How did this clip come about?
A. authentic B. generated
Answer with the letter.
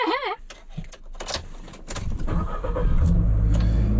A